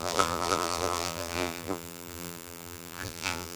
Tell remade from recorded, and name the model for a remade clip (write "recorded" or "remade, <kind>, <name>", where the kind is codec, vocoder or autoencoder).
remade, vocoder, BigVGAN v2